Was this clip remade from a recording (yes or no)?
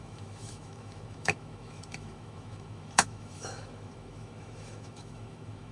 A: yes